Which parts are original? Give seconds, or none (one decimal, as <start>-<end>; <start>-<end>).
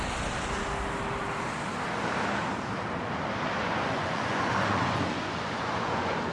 0.0-3.6